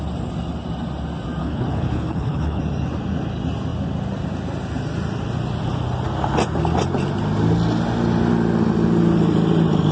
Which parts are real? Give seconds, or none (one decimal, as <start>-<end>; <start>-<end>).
0.0-1.4; 2.6-9.9

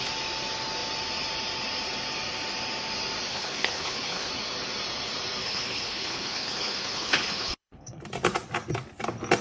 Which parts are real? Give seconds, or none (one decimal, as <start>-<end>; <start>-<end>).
0.0-3.3; 4.3-5.4; 8.0-9.4

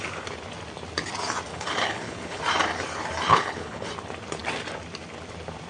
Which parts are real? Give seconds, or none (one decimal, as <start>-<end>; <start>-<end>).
0.0-1.5; 2.4-3.3; 3.9-5.7

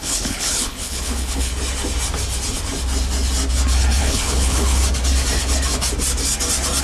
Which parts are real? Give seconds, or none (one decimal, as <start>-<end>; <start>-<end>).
1.5-4.0; 4.8-6.8

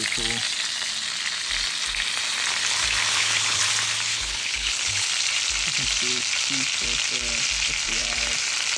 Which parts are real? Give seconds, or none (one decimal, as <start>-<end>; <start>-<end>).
0.0-3.1; 3.6-4.1; 5.1-8.8

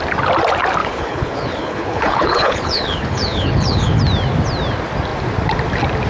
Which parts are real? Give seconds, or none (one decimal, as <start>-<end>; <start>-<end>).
0.0-0.8; 4.0-6.1